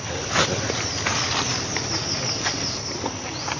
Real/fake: real